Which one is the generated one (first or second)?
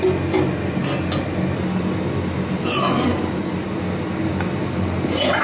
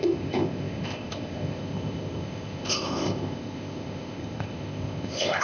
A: second